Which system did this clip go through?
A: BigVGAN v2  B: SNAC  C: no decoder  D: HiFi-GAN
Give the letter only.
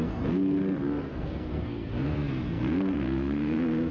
B